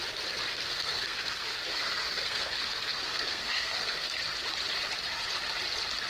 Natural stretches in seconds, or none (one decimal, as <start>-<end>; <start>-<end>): 0.0-0.5; 4.2-6.1